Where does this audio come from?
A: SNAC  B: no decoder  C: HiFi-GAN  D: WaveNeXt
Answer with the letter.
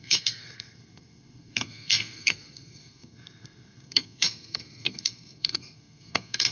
A